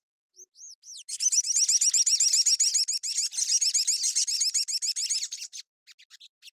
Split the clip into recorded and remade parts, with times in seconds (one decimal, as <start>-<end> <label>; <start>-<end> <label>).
0.0-6.5 recorded